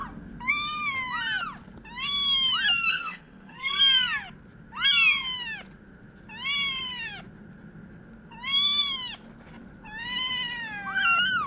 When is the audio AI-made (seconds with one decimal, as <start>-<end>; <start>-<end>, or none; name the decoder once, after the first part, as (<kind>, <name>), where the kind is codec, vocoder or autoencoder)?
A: 2.9-3.8 (codec, SNAC)